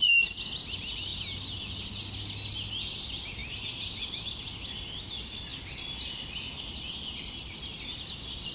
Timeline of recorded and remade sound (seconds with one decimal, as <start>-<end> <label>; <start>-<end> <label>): 0.0-8.5 recorded